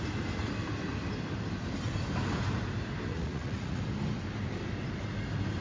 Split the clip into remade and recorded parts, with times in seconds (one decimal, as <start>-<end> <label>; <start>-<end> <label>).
0.0-3.1 recorded; 3.1-3.8 remade; 3.8-5.6 recorded

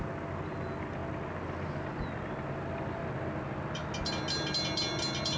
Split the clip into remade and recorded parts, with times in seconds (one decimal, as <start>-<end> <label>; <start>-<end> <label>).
0.0-5.4 recorded

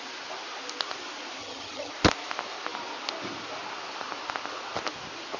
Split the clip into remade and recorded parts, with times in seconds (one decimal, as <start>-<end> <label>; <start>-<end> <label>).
0.0-1.4 recorded; 1.4-1.9 remade; 1.9-5.4 recorded

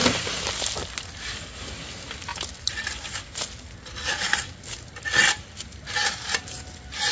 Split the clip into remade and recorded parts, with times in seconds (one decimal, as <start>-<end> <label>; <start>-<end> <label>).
0.0-0.6 remade; 0.6-2.3 recorded; 2.3-3.3 remade; 3.3-7.1 recorded